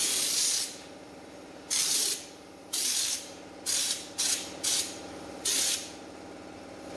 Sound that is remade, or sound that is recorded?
remade